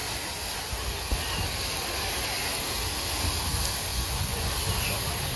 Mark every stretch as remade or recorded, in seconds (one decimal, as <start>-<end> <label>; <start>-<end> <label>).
0.0-3.9 recorded; 3.9-4.5 remade; 4.5-5.4 recorded